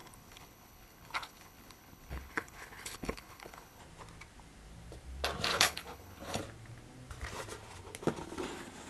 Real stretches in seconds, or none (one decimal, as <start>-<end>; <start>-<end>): 3.8-5.5; 6.4-8.9